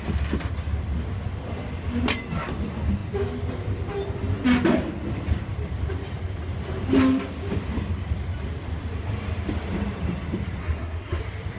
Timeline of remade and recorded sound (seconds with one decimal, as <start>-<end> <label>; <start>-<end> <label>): 0.0-10.6 recorded; 10.6-11.2 remade; 11.2-11.6 recorded